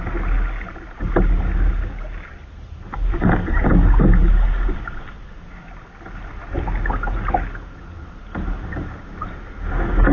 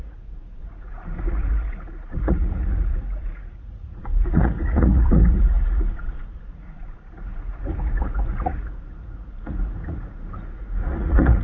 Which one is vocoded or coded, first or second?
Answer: second